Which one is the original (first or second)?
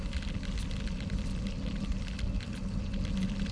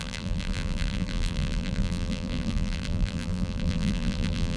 first